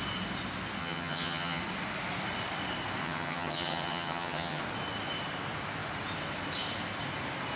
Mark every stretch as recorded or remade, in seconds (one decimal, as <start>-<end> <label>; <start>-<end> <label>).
0.0-0.8 recorded; 0.8-1.6 remade; 1.6-3.0 recorded; 3.0-4.6 remade; 4.6-7.6 recorded